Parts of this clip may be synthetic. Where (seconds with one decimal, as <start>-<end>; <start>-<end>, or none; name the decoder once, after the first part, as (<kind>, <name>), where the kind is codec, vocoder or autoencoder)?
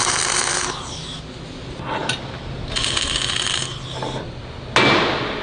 0.5-1.4 (codec, DAC)